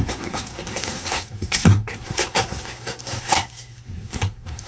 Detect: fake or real fake